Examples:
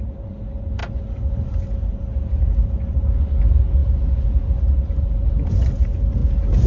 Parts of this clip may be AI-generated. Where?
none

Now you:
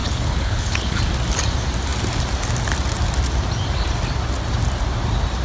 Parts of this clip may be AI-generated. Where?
0.0-1.0

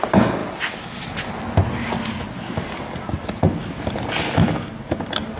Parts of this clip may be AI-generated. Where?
none